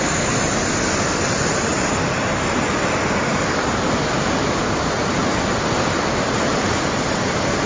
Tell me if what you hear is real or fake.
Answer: real